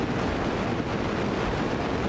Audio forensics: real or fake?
real